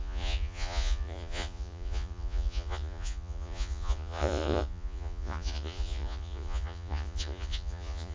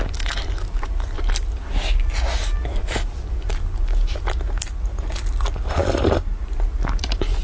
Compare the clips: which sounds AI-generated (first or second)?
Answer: first